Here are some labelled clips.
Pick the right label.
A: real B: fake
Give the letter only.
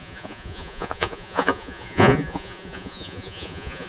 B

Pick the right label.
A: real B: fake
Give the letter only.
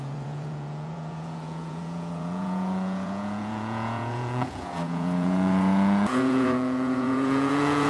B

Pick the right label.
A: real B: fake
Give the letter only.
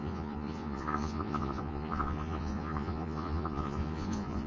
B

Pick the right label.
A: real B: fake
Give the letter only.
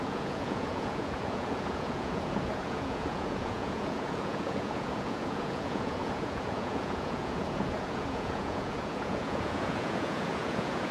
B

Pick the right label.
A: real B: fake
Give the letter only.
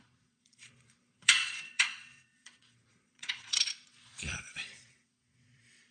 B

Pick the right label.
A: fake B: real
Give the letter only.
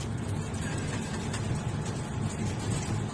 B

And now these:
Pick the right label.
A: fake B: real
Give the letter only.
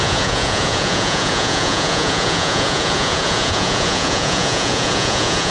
A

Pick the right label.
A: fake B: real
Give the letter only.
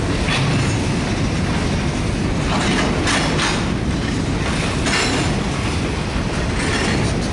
B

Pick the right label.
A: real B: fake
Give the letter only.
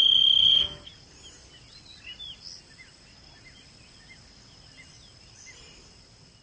A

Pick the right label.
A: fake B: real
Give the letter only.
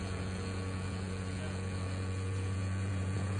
A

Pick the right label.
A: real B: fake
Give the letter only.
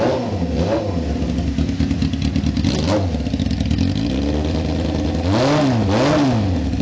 A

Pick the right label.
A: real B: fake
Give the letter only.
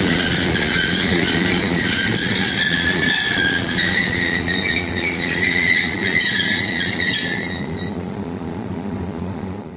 B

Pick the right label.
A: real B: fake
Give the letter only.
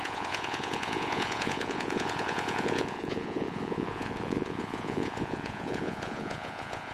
B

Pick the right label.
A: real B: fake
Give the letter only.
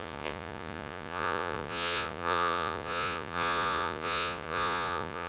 B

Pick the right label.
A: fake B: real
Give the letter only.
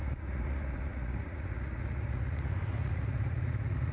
A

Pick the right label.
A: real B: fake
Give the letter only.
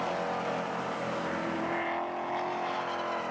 A